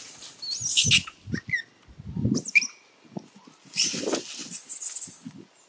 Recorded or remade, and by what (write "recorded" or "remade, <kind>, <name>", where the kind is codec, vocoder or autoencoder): recorded